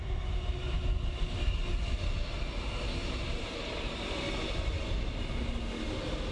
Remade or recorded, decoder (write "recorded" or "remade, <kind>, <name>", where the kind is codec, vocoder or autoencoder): recorded